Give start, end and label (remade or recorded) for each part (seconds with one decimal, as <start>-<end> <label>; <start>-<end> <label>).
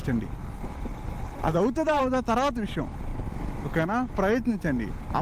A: 0.0-2.0 remade; 2.0-5.2 recorded